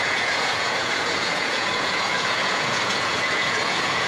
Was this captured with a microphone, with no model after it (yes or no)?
no